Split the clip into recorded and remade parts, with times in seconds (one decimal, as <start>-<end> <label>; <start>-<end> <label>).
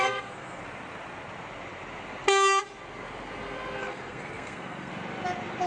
0.0-0.6 remade; 0.6-3.8 recorded; 3.8-4.9 remade; 4.9-5.7 recorded